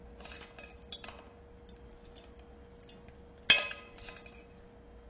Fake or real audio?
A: real